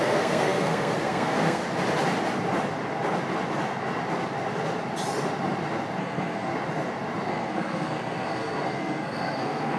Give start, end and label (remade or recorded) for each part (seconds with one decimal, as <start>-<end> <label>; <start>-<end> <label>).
0.0-1.6 remade; 1.6-6.0 recorded; 6.0-6.5 remade; 6.5-7.3 recorded; 7.3-9.8 remade